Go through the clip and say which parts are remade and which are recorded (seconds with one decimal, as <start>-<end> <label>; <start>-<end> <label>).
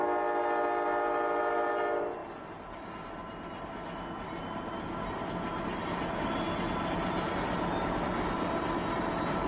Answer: 0.0-9.5 recorded